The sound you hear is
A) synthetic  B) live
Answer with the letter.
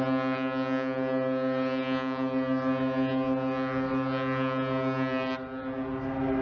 B